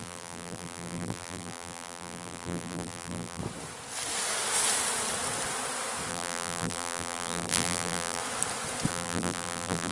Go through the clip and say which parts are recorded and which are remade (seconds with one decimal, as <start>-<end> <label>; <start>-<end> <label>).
0.0-3.4 remade; 3.4-6.1 recorded; 6.1-8.2 remade; 8.2-8.9 recorded; 8.9-9.9 remade